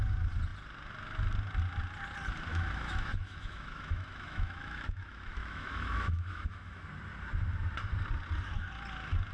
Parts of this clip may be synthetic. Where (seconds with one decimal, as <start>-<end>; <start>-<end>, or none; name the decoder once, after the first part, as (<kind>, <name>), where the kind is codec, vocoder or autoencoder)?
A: 2.5-6.8 (autoencoder, DAC-VAE)